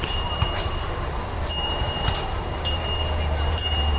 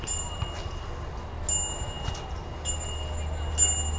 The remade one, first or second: first